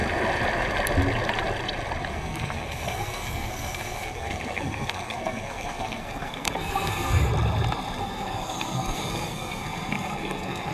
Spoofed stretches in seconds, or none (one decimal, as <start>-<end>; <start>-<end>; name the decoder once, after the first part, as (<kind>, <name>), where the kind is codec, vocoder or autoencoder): 2.1-7.2 (codec, SNAC); 8.0-10.7